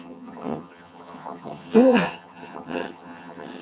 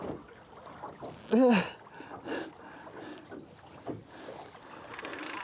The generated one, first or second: first